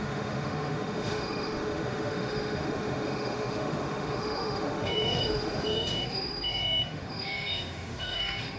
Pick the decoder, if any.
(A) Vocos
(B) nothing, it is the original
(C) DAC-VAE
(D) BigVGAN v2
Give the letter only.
C